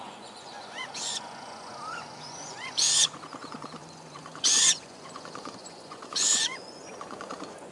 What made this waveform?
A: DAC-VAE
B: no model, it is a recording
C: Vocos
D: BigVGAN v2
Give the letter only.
C